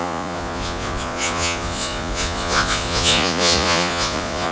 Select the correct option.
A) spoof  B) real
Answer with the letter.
A